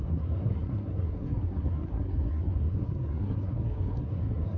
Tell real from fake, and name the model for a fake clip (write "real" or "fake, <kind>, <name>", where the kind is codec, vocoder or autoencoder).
fake, codec, SNAC